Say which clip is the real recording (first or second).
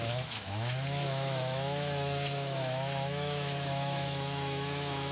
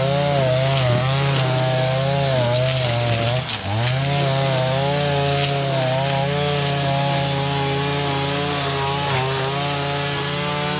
second